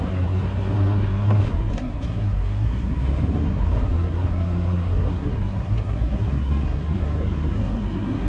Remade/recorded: remade